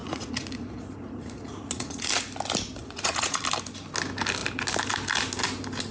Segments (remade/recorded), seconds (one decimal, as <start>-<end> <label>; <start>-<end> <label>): 0.0-2.1 remade; 2.1-2.8 recorded; 2.8-3.4 remade; 3.4-5.9 recorded